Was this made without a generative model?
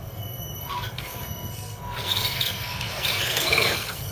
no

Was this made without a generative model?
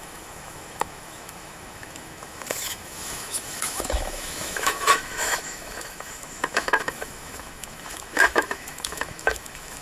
no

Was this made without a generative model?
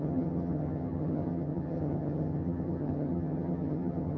no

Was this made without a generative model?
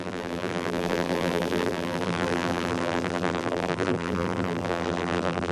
no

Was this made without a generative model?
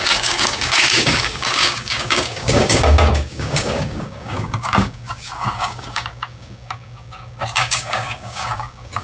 no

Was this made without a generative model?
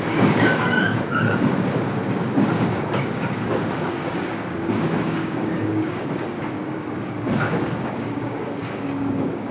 no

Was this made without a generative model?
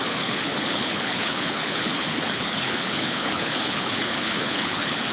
no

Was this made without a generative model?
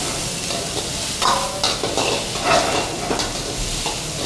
yes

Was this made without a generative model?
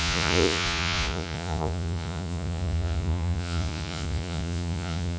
no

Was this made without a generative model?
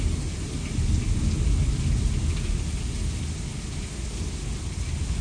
yes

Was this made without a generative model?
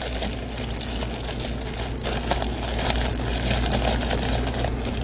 yes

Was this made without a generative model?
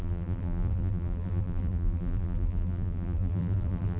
no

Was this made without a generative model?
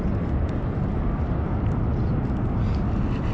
yes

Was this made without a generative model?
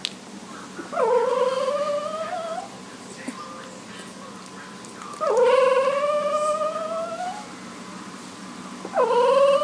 yes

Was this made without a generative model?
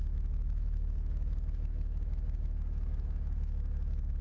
no